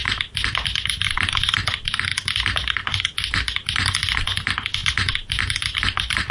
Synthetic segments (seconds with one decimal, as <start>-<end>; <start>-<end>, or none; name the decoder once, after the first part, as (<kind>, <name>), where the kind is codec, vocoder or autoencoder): none

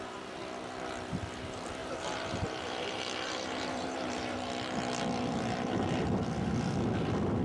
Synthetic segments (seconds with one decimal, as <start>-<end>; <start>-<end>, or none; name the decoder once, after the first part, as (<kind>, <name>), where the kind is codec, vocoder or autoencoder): 1.8-4.5 (vocoder, BigVGAN v2)

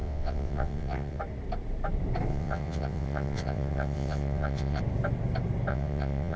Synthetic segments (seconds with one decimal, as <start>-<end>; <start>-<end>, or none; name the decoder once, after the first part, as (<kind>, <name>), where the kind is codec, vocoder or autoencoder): 0.0-1.2 (vocoder, WaveNeXt); 2.3-4.8; 5.7-6.4